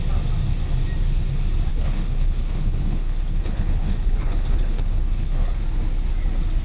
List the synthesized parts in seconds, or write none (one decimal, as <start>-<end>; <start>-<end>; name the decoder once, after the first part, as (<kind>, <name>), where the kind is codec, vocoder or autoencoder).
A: 1.7-5.6 (codec, HILCodec)